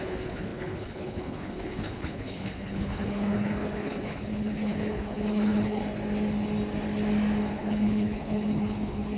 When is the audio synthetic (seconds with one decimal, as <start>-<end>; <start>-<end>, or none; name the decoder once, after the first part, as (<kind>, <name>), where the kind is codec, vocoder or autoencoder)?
0.0-5.8 (codec, HILCodec); 7.5-9.2